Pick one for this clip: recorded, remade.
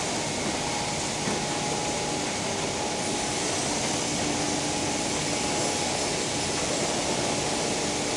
recorded